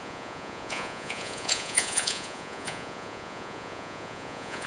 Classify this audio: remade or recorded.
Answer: remade